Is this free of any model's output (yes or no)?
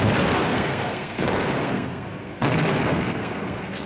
no